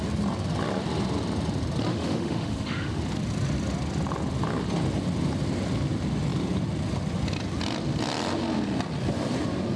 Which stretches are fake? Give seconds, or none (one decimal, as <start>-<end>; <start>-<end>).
1.9-3.0